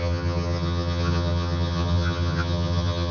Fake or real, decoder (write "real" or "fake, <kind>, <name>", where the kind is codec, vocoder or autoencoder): fake, vocoder, HiFi-GAN